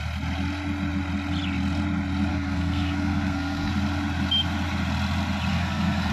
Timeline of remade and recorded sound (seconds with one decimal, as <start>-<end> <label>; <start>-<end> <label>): 0.0-2.3 recorded; 2.3-3.7 remade; 3.7-5.5 recorded; 5.5-6.1 remade